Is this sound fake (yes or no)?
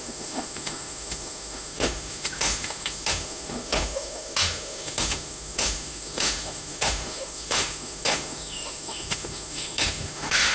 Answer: yes